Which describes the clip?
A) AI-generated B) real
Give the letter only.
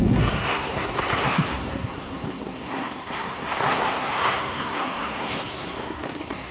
A